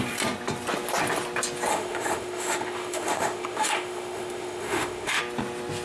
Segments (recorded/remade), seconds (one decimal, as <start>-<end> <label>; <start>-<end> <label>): 0.0-1.7 recorded; 1.7-5.2 remade; 5.2-5.8 recorded